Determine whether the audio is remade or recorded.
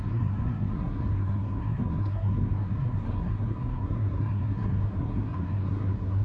remade